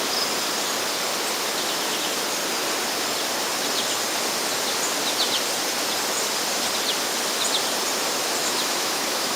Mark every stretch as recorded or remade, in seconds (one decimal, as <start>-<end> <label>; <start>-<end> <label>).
0.0-8.4 recorded; 8.4-9.4 remade